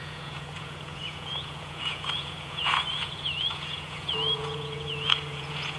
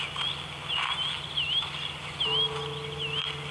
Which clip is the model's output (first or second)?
first